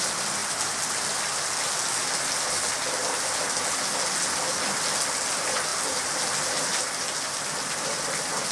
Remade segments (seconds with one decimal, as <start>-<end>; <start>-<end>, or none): none